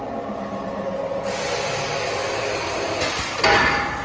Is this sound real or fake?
real